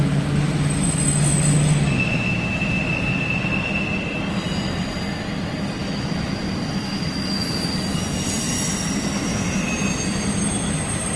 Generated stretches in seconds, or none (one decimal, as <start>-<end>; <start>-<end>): 5.8-6.3; 6.7-7.5